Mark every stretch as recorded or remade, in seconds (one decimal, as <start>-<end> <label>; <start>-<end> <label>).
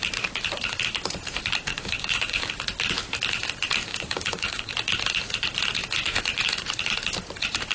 0.0-1.7 recorded; 1.7-2.5 remade; 2.5-3.9 recorded; 3.9-4.7 remade; 4.7-7.7 recorded